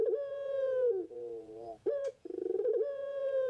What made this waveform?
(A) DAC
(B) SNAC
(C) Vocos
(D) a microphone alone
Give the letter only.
C